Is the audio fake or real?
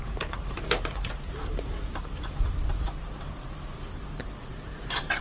fake